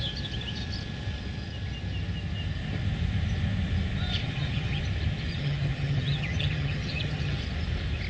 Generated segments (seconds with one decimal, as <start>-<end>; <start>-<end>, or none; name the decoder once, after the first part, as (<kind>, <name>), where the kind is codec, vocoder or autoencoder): 4.2-4.8 (vocoder, HiFi-GAN); 5.3-7.4